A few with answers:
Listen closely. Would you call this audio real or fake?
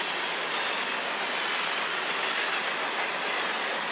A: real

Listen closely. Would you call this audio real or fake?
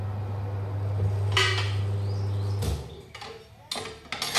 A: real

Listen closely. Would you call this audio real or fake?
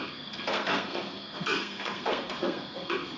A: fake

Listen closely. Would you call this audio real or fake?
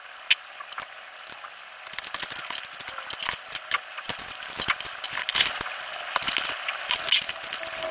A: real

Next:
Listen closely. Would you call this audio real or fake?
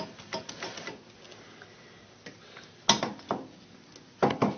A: real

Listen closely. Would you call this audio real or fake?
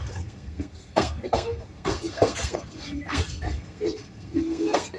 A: fake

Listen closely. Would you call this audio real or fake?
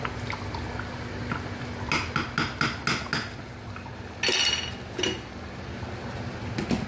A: real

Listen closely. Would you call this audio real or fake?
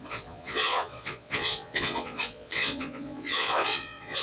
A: fake